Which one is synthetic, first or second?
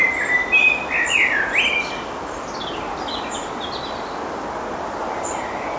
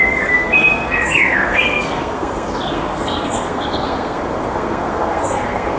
second